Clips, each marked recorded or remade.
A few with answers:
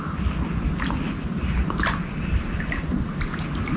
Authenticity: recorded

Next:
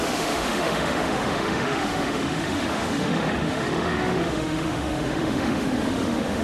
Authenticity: remade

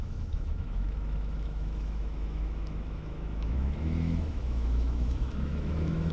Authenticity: remade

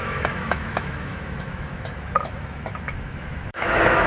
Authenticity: remade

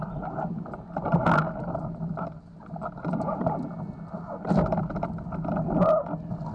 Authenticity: recorded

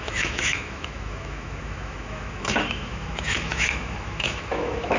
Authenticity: remade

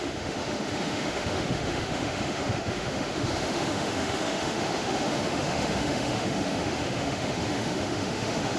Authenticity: remade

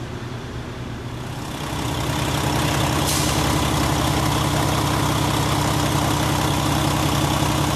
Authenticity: recorded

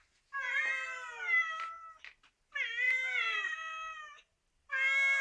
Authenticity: recorded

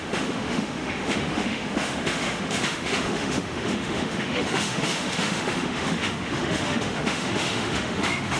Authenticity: remade